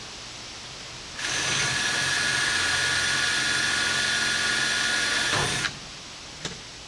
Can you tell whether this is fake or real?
real